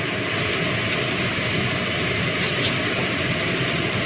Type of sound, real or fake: real